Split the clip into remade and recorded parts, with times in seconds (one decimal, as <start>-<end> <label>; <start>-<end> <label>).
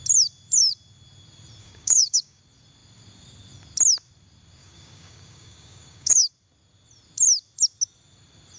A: 0.0-1.6 recorded; 1.6-2.4 remade; 2.4-4.6 recorded; 4.6-6.3 remade; 6.3-8.6 recorded